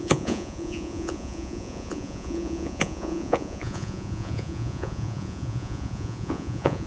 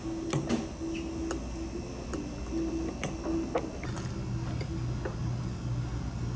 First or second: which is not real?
first